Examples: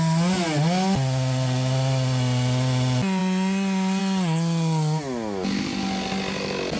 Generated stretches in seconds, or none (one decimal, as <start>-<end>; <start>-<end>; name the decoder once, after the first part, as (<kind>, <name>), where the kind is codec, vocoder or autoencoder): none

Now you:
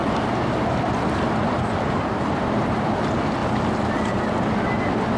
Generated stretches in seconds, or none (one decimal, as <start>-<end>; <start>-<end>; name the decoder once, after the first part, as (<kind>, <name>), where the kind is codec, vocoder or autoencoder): none

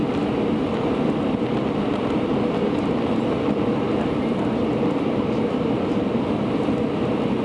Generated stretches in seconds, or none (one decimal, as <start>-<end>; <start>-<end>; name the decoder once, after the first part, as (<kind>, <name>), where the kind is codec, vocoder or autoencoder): none

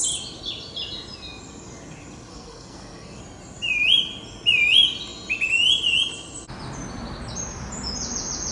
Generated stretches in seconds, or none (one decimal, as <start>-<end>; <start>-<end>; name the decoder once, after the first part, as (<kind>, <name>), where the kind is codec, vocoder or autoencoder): 2.3-3.2 (codec, SNAC)

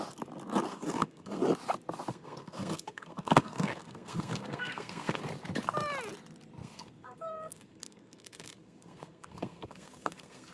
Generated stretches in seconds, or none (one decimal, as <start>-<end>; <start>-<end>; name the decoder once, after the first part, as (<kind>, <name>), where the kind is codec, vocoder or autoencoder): 0.7-1.4 (codec, SNAC); 2.1-5.2; 6.6-10.5

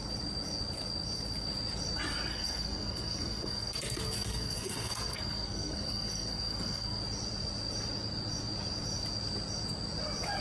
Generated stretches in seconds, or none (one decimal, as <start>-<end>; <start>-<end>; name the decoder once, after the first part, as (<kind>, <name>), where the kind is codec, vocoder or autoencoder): 2.3-7.0 (codec, SNAC)

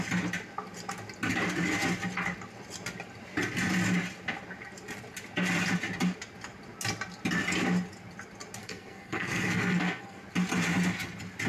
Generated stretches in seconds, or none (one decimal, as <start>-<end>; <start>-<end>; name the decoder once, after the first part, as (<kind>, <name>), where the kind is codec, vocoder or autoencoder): 8.6-10.2 (codec, SNAC)

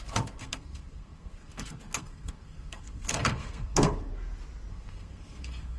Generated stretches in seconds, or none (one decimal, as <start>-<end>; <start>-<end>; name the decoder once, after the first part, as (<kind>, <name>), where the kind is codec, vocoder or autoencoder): 0.0-4.1 (codec, SNAC); 4.7-5.8